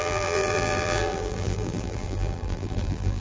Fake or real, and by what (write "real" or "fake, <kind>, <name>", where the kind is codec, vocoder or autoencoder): fake, vocoder, BigVGAN v2